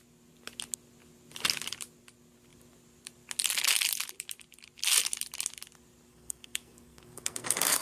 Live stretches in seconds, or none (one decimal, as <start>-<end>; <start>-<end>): 0.0-6.1